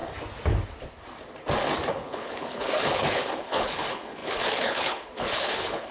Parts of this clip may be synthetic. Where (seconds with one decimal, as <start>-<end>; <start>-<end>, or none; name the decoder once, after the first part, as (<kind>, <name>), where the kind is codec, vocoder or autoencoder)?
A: 1.9-5.9 (codec, HILCodec)